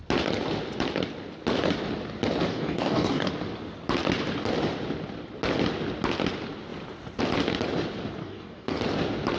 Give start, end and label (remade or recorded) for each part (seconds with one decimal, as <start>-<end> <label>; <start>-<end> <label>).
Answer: 0.0-2.5 recorded; 2.5-3.3 remade; 3.3-8.2 recorded; 8.2-8.8 remade; 8.8-9.4 recorded